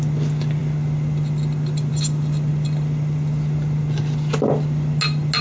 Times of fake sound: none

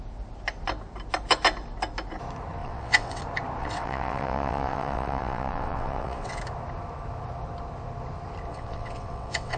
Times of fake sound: 2.6-3.2; 3.6-6.4; 8.5-9.6

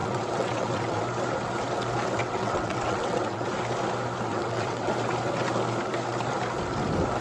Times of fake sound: 0.0-1.0; 2.2-3.5; 4.3-4.9